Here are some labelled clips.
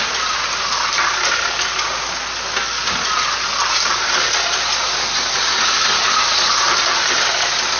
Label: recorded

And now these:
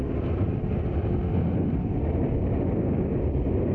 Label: recorded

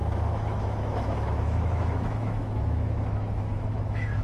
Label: remade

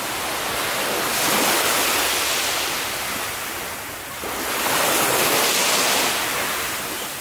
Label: recorded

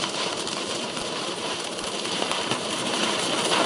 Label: remade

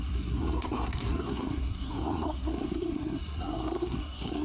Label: remade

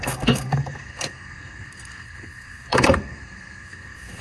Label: remade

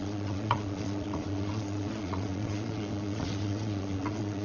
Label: remade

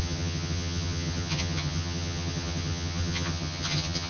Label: remade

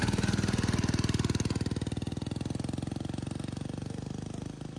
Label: recorded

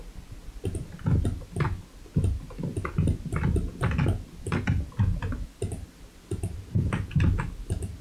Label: recorded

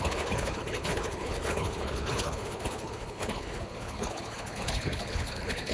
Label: remade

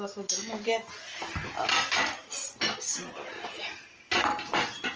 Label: recorded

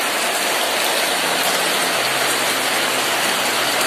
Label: recorded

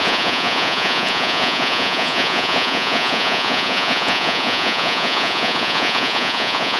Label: remade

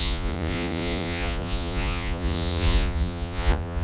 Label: remade